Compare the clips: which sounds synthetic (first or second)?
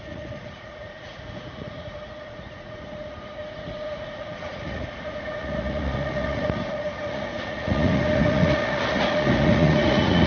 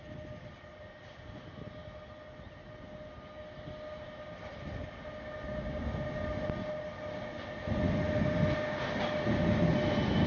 first